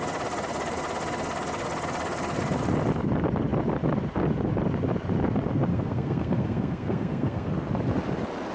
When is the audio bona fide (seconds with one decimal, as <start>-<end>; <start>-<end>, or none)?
0.0-5.7; 7.5-8.5